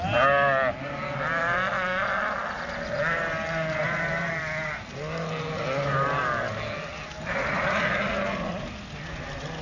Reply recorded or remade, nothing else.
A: recorded